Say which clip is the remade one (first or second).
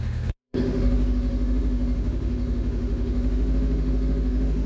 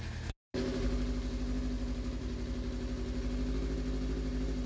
first